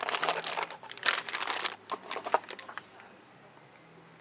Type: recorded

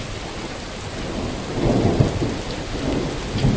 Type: recorded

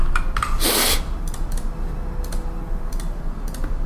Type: recorded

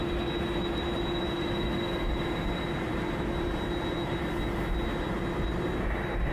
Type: recorded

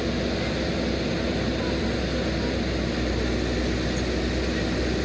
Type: recorded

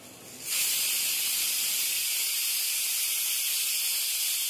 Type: recorded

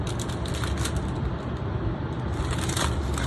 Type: recorded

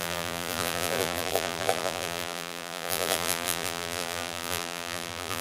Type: remade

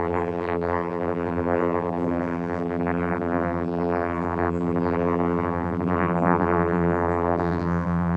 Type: remade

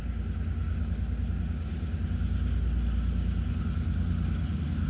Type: recorded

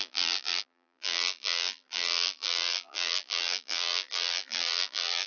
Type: remade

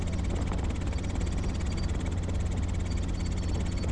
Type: recorded